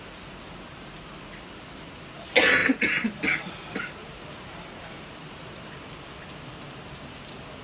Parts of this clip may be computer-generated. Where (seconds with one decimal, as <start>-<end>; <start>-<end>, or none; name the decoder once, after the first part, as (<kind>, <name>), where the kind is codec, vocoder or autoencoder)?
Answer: 2.6-3.2 (vocoder, BigVGAN v2); 4.0-5.1